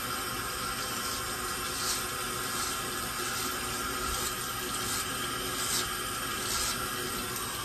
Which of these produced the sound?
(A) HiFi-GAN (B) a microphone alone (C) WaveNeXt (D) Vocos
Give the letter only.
B